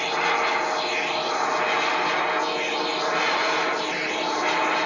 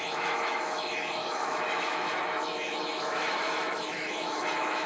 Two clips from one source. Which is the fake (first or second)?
second